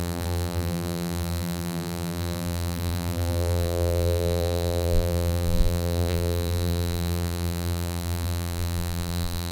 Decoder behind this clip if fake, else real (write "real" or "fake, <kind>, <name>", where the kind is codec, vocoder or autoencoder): fake, vocoder, BigVGAN v2